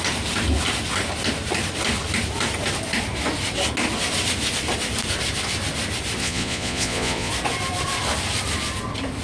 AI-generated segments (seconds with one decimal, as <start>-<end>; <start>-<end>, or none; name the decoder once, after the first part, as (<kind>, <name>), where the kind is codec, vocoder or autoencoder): 6.2-7.3 (vocoder, Vocos)